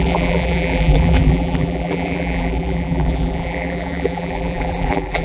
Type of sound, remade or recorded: remade